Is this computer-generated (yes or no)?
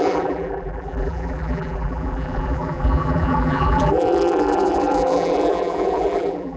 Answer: yes